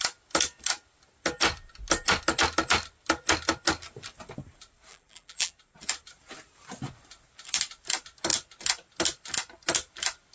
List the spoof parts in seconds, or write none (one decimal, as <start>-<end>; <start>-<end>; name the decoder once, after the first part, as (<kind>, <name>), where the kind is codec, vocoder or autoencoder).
4.9-5.5 (vocoder, BigVGAN v2)